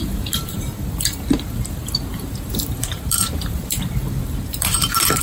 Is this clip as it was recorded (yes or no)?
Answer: no